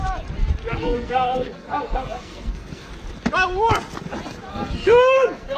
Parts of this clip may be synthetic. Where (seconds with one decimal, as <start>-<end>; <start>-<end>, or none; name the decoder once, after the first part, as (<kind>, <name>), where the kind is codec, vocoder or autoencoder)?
0.7-2.9 (codec, SNAC); 4.5-5.6